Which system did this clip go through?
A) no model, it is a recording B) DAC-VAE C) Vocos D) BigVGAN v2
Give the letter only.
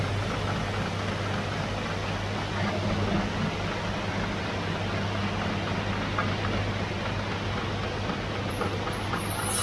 A